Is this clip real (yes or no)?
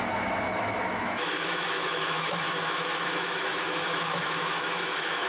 no